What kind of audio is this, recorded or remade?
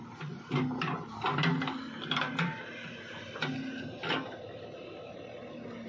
recorded